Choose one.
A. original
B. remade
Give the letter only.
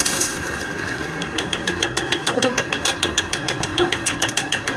B